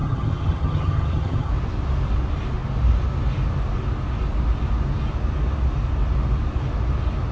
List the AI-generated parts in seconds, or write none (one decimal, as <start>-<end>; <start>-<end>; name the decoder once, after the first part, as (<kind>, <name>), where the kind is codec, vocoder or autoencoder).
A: 0.0-1.5 (vocoder, HiFi-GAN)